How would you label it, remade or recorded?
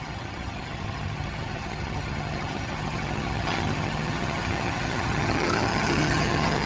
remade